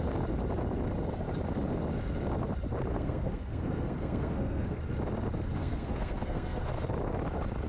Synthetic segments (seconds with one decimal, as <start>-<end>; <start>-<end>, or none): 2.9-4.8; 5.6-6.9